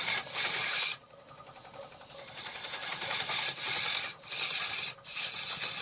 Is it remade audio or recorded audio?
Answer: recorded